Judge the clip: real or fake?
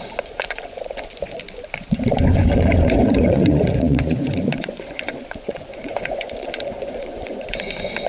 fake